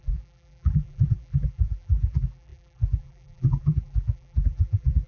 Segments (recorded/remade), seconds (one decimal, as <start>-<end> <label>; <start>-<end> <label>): 0.0-5.1 remade